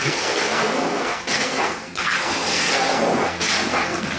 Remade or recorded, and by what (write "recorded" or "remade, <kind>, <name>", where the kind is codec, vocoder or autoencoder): remade, codec, SNAC